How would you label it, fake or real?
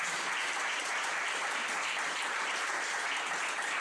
fake